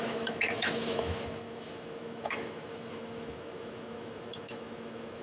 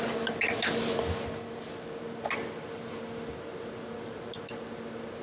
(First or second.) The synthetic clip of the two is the first